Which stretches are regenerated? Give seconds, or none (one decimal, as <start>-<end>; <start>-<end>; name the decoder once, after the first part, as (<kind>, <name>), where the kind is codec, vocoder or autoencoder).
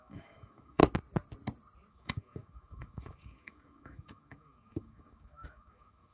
0.0-0.8 (autoencoder, DAC-VAE); 1.9-6.1